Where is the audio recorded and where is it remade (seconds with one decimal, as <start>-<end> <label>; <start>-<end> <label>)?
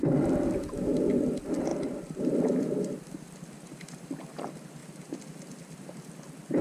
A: 0.0-6.6 recorded